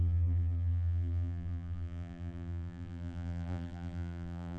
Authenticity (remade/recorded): remade